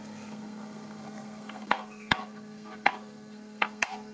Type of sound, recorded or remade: remade